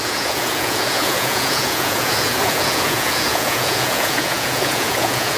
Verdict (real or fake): fake